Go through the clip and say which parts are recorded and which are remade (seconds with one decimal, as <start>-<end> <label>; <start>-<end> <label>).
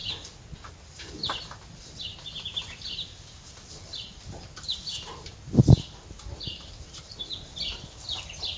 0.0-8.6 recorded